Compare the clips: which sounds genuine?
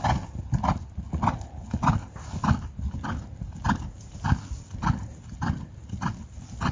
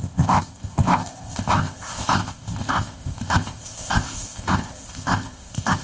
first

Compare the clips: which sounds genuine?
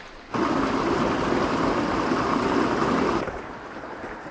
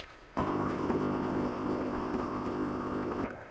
first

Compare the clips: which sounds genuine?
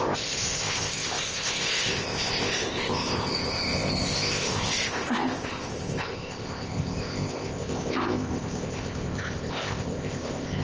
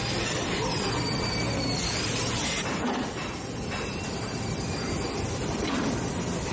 second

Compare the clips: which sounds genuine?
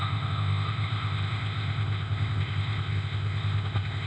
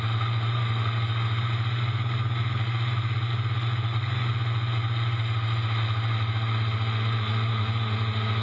second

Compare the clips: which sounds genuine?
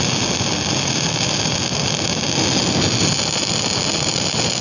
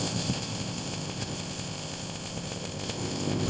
first